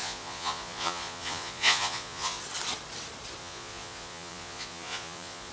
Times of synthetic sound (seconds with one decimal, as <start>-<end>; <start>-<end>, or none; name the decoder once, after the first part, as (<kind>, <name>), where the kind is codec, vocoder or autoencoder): 0.0-2.4 (vocoder, Vocos); 3.4-5.5